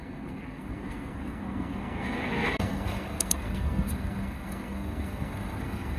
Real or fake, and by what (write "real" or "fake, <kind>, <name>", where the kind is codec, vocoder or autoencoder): fake, codec, SNAC